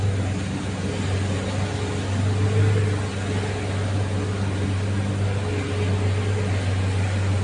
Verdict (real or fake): real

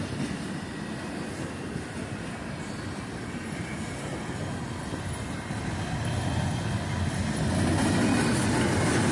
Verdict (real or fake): real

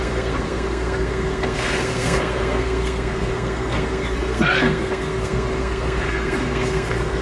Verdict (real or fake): fake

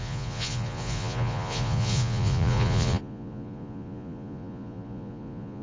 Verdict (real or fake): fake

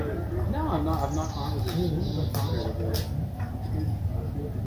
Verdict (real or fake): real